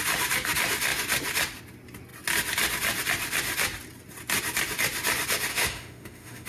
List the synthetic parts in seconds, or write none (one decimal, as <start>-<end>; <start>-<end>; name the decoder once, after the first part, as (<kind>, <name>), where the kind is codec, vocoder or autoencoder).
5.5-6.5 (autoencoder, DAC-VAE)